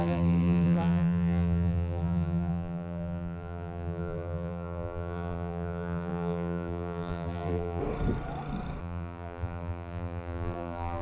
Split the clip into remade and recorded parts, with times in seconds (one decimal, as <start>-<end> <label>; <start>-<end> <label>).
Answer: 0.0-7.8 remade; 7.8-8.8 recorded; 8.8-11.0 remade